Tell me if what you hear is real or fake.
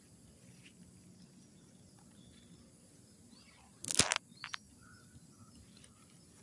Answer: real